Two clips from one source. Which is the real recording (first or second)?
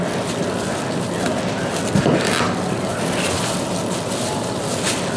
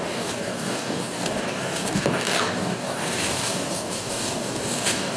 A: first